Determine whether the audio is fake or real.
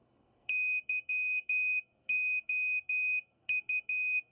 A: fake